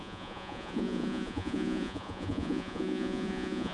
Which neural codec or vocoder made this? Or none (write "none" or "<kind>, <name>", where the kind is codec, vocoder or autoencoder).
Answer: vocoder, Vocos